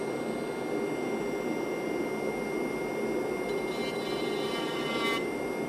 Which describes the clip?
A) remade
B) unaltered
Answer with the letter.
B